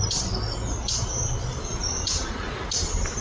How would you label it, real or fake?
real